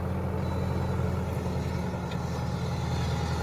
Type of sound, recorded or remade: recorded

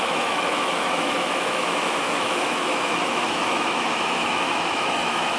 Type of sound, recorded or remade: remade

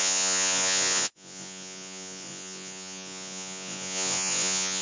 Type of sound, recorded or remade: remade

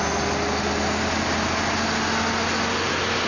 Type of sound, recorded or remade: recorded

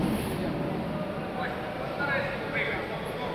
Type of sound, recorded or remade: recorded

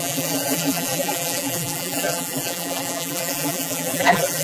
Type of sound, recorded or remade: remade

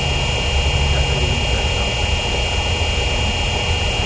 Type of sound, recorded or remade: recorded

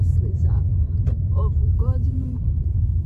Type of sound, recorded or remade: remade